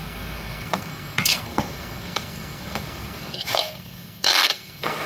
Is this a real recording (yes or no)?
no